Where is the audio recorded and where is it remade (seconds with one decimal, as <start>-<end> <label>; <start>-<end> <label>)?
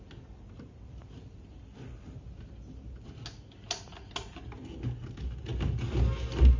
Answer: 0.0-6.6 recorded